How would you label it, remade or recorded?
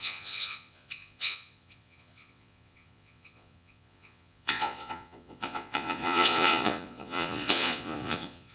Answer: remade